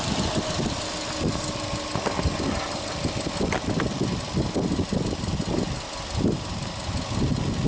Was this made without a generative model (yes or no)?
yes